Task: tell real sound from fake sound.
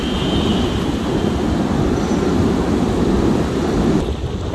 real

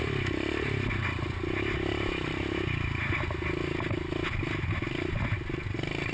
real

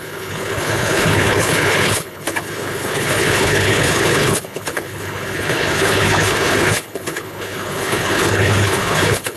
fake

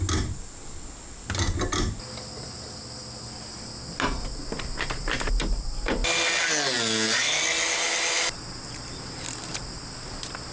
real